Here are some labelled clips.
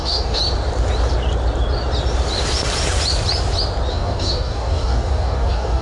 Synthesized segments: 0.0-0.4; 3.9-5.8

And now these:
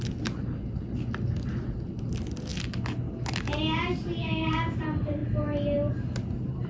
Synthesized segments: 4.2-4.8